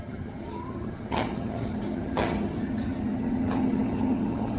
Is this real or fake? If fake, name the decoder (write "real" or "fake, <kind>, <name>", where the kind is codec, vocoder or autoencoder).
fake, vocoder, HiFi-GAN